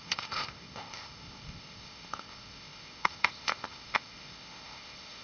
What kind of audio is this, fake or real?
fake